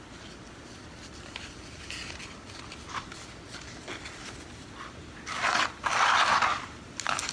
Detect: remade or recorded recorded